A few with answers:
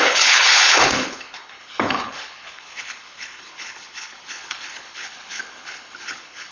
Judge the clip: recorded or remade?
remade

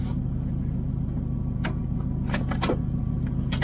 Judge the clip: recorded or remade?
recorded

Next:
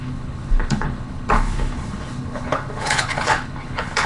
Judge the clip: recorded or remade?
remade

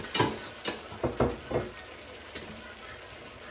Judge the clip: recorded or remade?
recorded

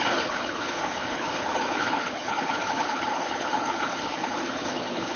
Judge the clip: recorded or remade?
remade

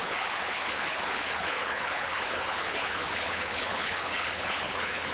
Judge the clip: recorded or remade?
remade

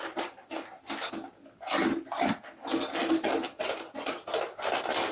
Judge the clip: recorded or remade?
recorded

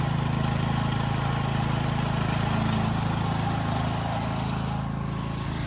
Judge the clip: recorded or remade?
recorded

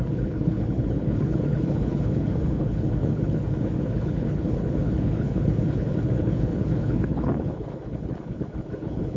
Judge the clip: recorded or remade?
remade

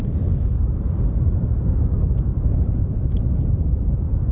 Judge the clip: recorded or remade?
recorded